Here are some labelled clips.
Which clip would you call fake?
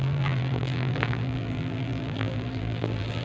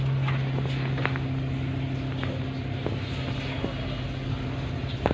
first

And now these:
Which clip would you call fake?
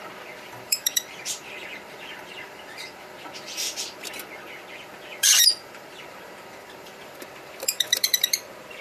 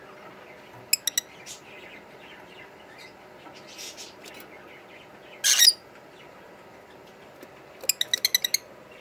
first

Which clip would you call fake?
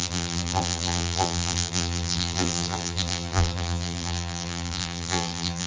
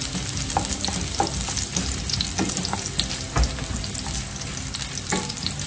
first